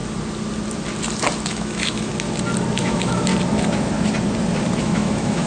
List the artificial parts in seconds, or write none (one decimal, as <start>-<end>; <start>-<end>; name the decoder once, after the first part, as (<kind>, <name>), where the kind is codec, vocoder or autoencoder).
1.5-2.1 (autoencoder, DAC-VAE); 2.8-3.3; 4.8-5.5